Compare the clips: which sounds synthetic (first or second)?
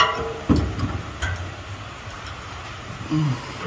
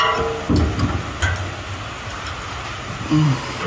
first